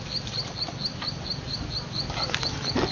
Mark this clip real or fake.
real